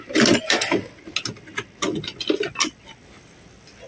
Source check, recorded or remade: recorded